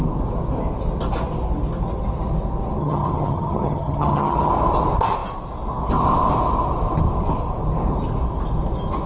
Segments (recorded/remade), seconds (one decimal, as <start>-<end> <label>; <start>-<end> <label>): 0.0-2.8 recorded; 2.8-4.5 remade; 4.5-9.1 recorded

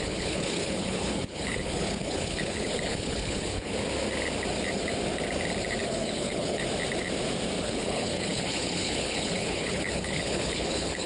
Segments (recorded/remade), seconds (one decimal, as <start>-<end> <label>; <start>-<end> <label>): 0.0-3.7 remade; 3.7-5.8 recorded; 5.8-6.6 remade; 6.6-7.6 recorded; 7.6-11.1 remade